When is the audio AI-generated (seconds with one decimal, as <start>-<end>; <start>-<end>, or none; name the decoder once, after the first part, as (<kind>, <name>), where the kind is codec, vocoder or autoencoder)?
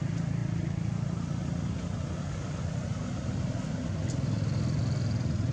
none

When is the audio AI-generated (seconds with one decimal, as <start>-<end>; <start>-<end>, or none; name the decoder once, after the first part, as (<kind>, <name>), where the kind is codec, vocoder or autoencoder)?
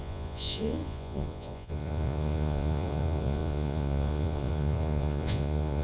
0.0-5.8 (vocoder, Vocos)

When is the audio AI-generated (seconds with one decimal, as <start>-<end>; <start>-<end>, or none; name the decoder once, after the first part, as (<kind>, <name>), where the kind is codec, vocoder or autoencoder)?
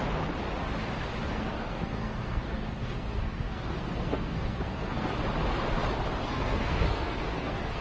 1.2-5.1 (codec, SNAC); 6.2-7.8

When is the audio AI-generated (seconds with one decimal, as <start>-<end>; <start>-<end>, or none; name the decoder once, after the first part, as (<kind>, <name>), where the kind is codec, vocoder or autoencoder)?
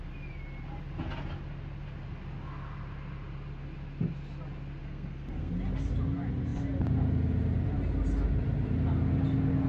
4.8-5.5 (codec, SNAC)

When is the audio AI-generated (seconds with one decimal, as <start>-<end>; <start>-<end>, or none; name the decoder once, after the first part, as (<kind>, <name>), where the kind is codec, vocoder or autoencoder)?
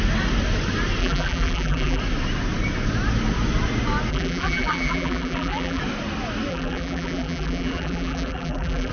1.0-2.0 (vocoder, BigVGAN v2); 4.1-5.8; 6.5-8.9